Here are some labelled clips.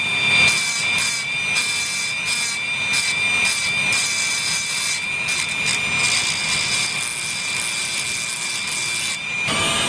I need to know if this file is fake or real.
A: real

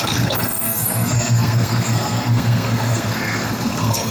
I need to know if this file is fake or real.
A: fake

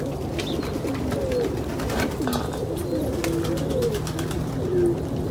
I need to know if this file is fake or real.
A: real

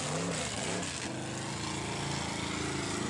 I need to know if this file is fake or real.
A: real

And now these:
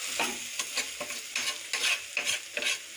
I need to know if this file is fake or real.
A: real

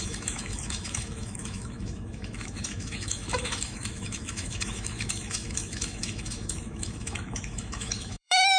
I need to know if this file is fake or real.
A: fake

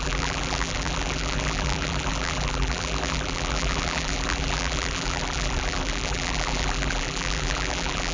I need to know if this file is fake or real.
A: fake